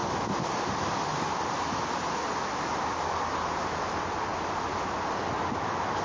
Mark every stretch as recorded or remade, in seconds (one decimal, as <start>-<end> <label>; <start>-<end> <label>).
0.0-6.0 recorded